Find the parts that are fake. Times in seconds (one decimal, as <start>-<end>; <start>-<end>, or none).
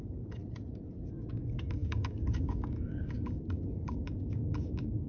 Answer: 0.0-0.4; 1.3-5.1